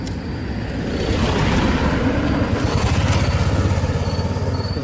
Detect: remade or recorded recorded